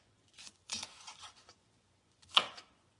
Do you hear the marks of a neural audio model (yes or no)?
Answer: yes